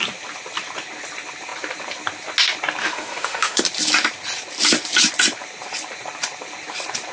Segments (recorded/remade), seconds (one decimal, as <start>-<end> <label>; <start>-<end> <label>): 0.0-2.8 recorded; 2.8-3.6 remade; 3.6-7.1 recorded